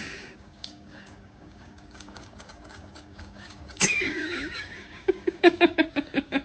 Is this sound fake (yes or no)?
yes